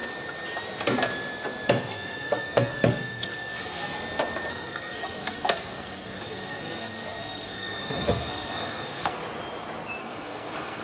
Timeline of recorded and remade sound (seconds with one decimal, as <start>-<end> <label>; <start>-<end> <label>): 0.0-1.8 recorded; 1.8-3.9 remade; 3.9-4.5 recorded; 4.5-9.2 remade; 9.2-10.0 recorded; 10.0-10.8 remade